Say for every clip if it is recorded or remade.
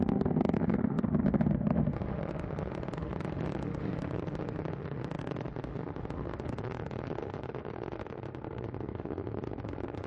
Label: remade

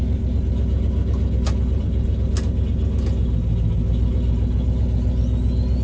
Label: recorded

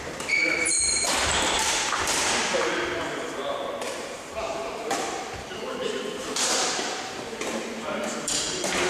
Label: remade